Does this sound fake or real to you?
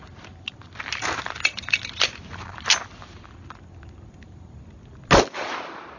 real